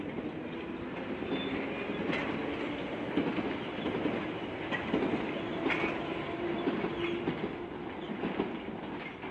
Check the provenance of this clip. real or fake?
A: real